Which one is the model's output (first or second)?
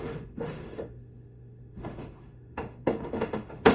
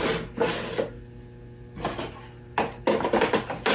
first